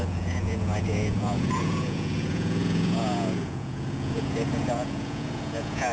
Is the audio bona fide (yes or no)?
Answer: no